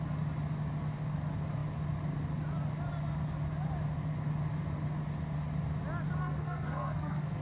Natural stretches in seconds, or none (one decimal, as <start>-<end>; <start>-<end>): 0.0-6.2